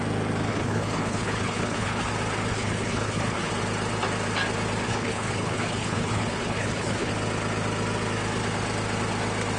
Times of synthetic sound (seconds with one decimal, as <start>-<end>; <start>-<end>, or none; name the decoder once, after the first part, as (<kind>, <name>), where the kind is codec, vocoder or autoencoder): 0.5-2.1 (codec, HILCodec); 2.5-3.5; 4.9-7.1